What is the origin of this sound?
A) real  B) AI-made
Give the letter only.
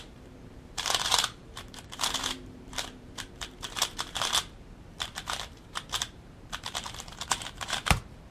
B